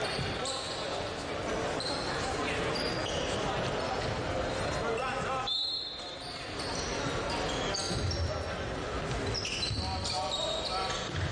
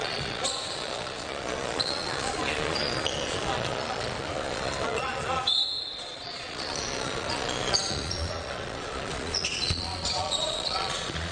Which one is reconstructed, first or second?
second